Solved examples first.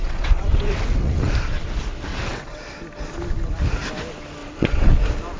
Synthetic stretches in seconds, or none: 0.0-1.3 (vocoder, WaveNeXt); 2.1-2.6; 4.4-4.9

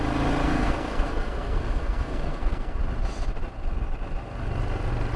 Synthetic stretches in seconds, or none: 0.4-2.8 (codec, SNAC)